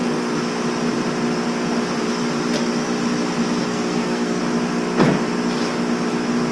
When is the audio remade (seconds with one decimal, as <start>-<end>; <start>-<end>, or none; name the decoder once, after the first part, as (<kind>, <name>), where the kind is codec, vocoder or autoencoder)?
3.6-4.4 (codec, SNAC)